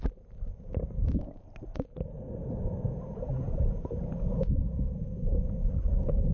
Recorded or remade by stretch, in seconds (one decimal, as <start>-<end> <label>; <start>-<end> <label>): 0.0-2.4 recorded; 2.4-6.3 remade